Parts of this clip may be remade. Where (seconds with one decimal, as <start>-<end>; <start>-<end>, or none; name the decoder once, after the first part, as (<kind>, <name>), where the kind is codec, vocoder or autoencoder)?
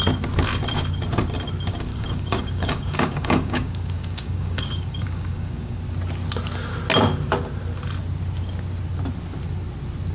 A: 1.9-5.8 (codec, DAC)